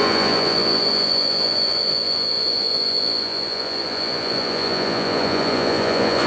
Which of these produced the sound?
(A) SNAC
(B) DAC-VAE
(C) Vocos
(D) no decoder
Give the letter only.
C